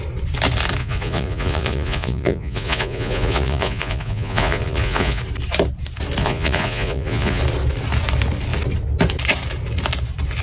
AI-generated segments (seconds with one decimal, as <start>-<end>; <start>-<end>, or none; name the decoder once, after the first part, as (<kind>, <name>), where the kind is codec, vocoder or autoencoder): 0.8-5.2 (vocoder, Vocos); 6.2-7.4